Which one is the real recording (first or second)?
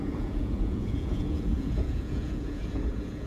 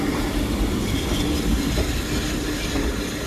second